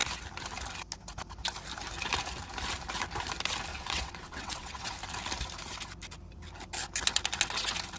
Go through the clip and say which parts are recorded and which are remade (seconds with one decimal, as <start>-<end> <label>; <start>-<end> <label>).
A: 0.0-3.7 recorded; 3.7-4.9 remade; 4.9-8.0 recorded